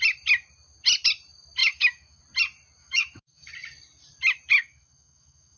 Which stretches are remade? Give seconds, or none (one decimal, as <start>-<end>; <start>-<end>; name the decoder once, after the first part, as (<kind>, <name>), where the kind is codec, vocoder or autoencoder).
1.6-2.2 (autoencoder, DAC-VAE); 2.8-3.5; 4.6-5.6